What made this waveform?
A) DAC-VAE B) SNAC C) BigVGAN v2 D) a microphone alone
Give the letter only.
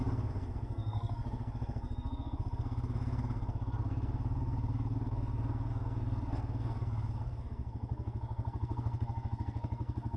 B